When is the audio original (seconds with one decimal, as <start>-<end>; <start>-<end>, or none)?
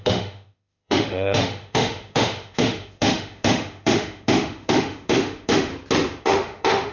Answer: 5.7-6.2